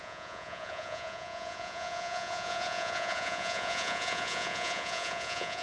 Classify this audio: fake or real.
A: fake